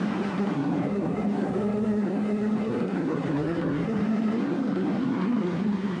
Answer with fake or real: fake